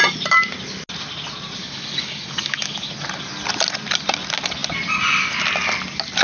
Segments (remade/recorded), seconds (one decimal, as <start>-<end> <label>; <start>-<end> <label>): 0.0-1.6 recorded; 1.6-2.9 remade; 2.9-6.2 recorded